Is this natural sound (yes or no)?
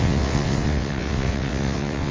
no